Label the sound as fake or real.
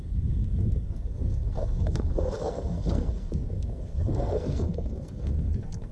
fake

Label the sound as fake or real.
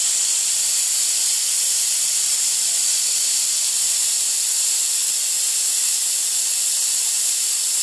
real